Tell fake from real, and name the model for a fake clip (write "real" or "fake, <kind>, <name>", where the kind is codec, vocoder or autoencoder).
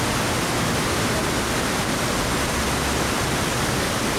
real